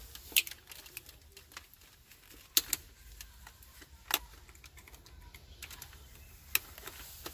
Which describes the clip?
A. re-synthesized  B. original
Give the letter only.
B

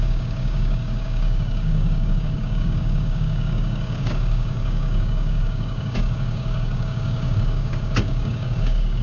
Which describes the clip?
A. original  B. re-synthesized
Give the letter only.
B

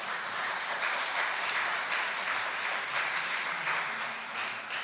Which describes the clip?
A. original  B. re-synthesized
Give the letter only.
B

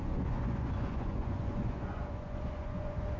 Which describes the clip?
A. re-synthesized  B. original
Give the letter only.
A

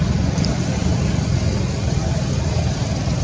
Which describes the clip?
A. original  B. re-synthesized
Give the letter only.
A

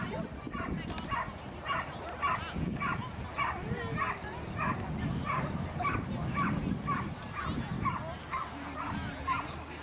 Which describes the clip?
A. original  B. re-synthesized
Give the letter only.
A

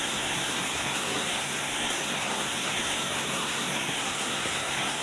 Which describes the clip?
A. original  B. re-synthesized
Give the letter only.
B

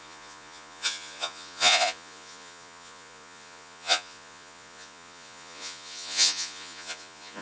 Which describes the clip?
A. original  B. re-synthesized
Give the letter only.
B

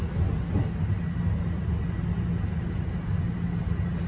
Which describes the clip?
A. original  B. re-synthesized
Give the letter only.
A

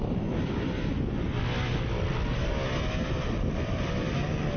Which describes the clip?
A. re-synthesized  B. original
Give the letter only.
B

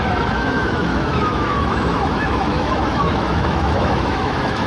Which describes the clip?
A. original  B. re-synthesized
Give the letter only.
B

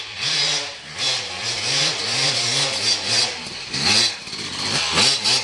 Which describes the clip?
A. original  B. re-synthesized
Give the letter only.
A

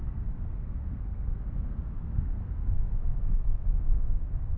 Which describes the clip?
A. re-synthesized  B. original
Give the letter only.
A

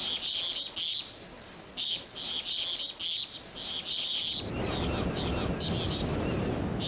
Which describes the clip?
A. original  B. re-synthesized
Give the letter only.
A